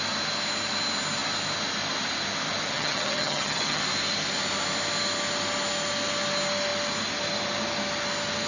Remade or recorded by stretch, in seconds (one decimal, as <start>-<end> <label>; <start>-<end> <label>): 0.0-2.7 recorded; 2.7-3.8 remade; 3.8-8.5 recorded